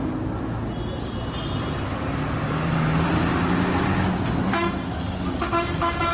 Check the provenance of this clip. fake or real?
real